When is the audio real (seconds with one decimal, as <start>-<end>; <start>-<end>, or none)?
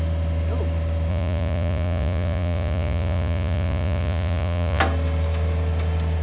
0.0-1.1; 4.8-6.2